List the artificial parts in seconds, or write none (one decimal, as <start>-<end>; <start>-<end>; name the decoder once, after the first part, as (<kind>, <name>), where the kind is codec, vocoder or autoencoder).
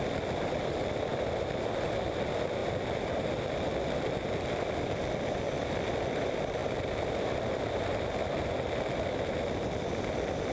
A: 2.6-3.3 (vocoder, BigVGAN v2)